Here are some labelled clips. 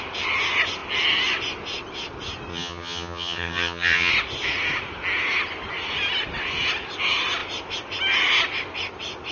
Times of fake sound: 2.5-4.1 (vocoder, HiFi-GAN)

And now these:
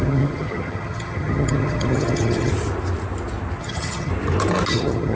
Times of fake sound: 0.0-2.5 (vocoder, HiFi-GAN); 3.6-4.1; 4.7-5.2